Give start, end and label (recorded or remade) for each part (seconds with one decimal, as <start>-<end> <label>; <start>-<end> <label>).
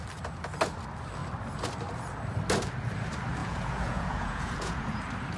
0.0-3.4 recorded; 3.4-5.0 remade; 5.0-5.4 recorded